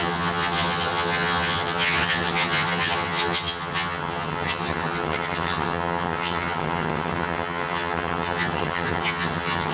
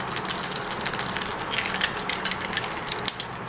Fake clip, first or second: first